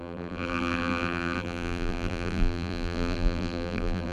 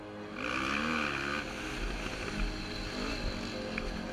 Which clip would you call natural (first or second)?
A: second